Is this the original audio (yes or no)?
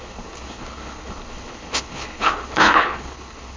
no